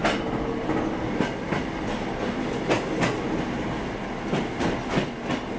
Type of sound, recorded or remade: recorded